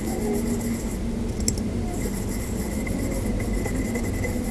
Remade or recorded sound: recorded